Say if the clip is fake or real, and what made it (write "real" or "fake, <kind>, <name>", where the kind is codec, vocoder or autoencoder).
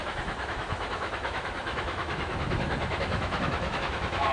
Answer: fake, autoencoder, DAC-VAE